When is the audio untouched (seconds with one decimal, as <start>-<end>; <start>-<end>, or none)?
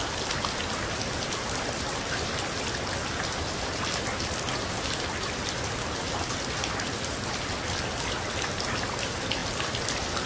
0.0-10.3